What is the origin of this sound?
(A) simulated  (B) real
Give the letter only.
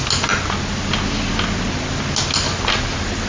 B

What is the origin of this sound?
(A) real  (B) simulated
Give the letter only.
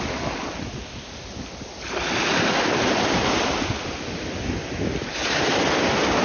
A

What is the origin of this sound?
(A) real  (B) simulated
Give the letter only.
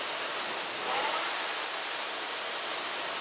A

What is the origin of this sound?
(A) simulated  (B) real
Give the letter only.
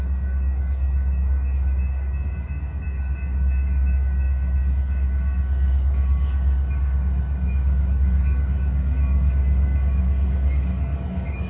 A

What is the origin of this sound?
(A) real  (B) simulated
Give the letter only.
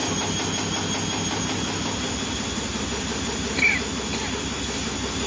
A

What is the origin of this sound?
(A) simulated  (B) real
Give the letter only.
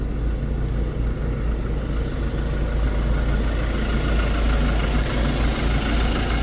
B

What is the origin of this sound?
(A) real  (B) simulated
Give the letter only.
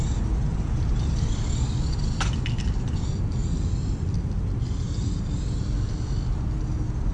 A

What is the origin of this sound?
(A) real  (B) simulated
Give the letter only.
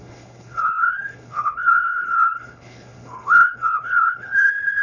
B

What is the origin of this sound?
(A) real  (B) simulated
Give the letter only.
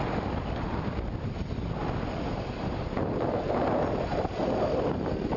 A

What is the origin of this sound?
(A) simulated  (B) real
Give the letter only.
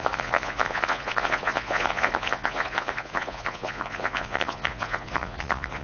A